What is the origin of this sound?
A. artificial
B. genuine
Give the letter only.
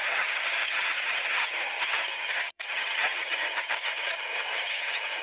A